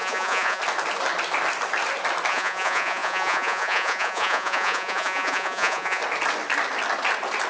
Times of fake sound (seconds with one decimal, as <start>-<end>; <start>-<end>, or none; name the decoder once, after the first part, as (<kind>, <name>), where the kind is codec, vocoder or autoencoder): 0.0-0.6 (vocoder, Vocos); 2.3-6.0